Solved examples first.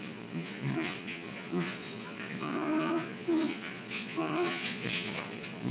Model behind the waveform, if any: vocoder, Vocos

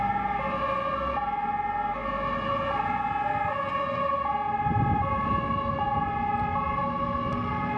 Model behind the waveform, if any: none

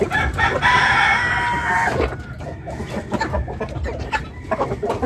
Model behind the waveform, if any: none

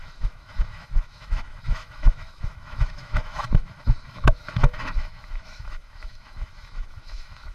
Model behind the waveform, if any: autoencoder, DAC-VAE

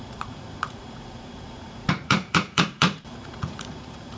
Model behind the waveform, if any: vocoder, Vocos